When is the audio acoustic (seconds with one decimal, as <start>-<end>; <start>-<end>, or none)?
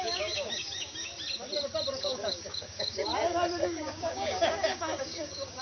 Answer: 1.1-2.0; 3.1-3.6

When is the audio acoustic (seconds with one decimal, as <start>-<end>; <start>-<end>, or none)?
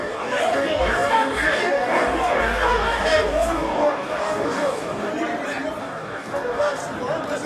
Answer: 5.1-5.8; 6.8-7.5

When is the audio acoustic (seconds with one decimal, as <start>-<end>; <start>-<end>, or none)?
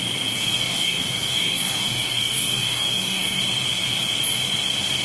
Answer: 0.0-0.4; 3.4-5.0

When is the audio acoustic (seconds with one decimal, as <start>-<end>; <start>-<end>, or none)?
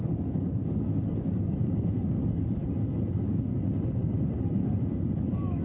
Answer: 2.6-3.1; 3.5-4.5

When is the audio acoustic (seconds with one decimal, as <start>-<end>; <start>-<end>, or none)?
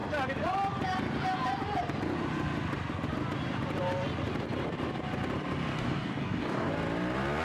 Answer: 0.0-5.7; 6.7-7.4